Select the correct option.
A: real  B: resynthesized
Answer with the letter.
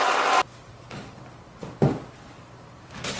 A